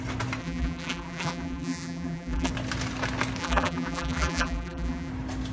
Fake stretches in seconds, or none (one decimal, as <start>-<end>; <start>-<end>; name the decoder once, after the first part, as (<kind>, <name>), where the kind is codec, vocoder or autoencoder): 0.4-2.5 (vocoder, BigVGAN v2); 3.4-5.1